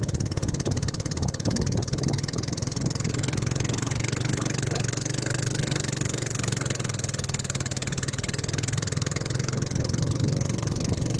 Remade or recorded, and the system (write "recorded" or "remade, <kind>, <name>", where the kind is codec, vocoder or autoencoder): remade, codec, HILCodec